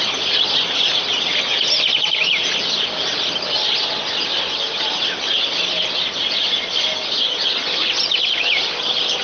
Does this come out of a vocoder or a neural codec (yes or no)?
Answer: no